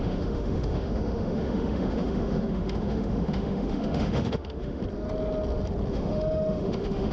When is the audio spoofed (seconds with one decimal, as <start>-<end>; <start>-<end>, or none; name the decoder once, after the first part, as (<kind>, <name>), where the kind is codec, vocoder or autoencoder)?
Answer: 0.0-4.8 (autoencoder, DAC-VAE); 5.9-7.1